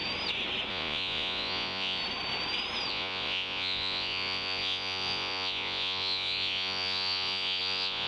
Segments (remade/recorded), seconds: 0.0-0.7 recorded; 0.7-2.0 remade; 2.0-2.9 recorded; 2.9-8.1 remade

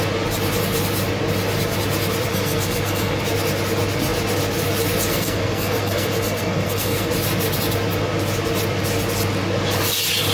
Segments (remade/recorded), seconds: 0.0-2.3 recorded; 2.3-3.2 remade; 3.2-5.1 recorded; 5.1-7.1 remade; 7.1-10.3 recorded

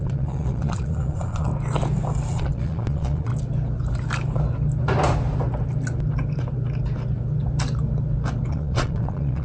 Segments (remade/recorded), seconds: 0.0-1.5 remade; 1.5-2.3 recorded; 2.3-3.3 remade; 3.3-8.5 recorded; 8.5-9.4 remade